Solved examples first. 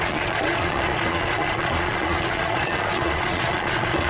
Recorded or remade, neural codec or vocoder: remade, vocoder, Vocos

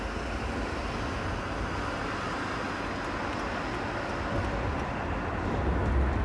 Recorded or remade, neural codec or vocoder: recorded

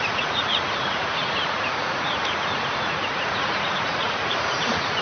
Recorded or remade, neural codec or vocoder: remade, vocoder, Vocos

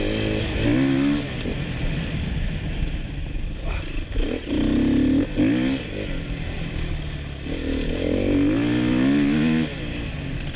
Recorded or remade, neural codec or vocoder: recorded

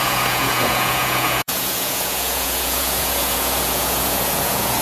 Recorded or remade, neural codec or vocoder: remade, vocoder, Vocos